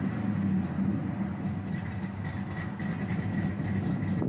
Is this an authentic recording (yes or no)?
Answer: yes